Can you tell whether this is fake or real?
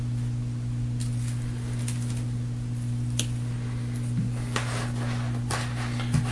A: real